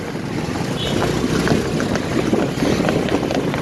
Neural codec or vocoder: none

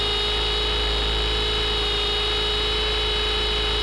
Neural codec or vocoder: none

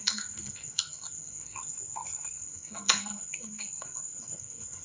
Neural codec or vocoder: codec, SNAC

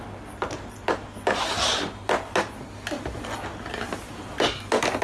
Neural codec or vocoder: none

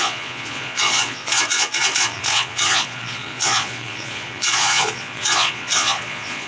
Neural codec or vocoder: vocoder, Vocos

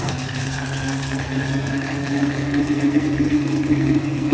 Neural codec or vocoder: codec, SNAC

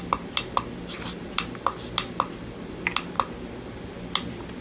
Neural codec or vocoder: none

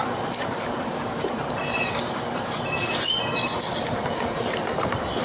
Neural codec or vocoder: vocoder, BigVGAN v2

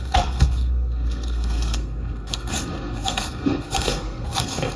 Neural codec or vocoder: codec, SNAC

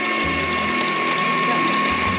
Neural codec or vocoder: none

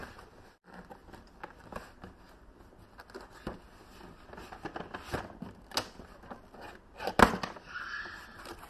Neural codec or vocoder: none